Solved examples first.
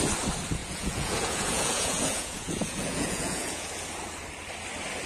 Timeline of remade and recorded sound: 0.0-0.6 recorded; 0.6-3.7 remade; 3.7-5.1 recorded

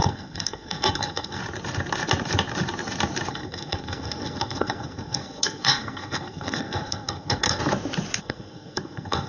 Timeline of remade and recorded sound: 0.0-1.4 remade; 1.4-3.3 recorded; 3.3-7.6 remade; 7.6-8.2 recorded; 8.2-9.3 remade